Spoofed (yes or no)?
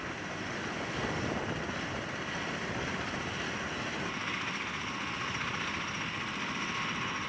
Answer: no